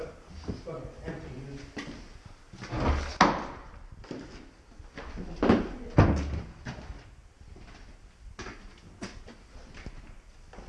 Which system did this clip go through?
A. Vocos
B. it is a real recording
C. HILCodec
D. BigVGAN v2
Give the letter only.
B